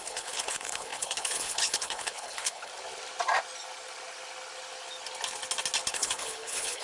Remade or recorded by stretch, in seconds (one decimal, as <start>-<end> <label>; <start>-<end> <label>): 0.0-2.7 remade; 2.7-5.9 recorded; 5.9-6.8 remade